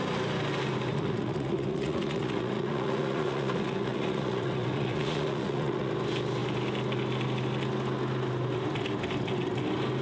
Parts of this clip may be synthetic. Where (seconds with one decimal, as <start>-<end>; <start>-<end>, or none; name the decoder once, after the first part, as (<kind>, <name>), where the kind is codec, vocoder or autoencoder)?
0.9-5.9 (vocoder, Vocos)